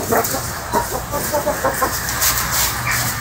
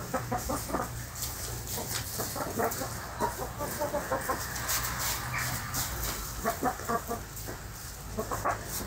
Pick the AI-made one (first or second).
first